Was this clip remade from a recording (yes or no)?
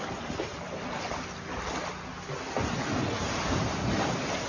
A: no